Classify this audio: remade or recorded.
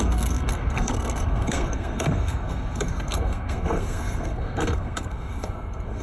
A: remade